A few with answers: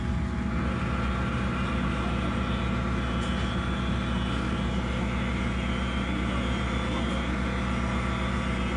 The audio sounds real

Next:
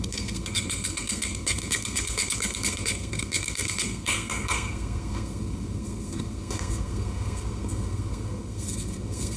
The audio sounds fake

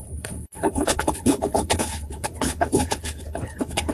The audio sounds fake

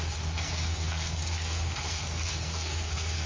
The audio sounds fake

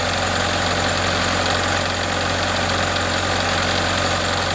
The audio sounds real